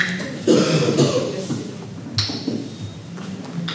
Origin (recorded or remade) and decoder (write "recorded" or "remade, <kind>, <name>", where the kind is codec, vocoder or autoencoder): recorded